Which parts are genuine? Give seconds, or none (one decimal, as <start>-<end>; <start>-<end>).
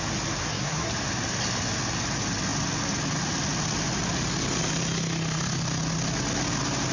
0.0-0.4; 0.9-6.9